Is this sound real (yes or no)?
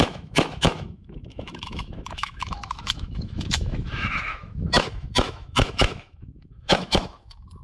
no